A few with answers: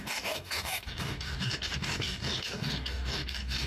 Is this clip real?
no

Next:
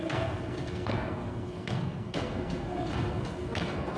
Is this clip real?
no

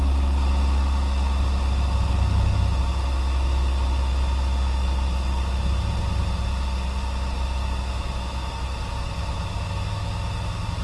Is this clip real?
yes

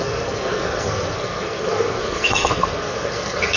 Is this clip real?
no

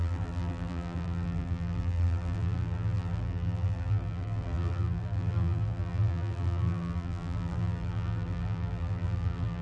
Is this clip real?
no